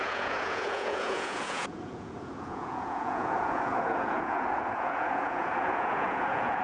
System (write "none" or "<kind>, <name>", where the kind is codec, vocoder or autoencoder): vocoder, Vocos